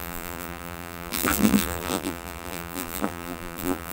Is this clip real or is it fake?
fake